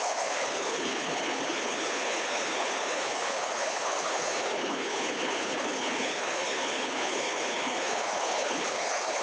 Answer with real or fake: fake